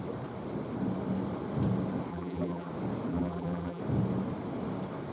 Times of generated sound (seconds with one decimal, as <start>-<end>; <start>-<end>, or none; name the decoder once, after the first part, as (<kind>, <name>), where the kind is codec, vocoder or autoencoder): 2.1-2.7 (vocoder, BigVGAN v2); 3.1-3.8